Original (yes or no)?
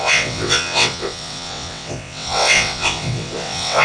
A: no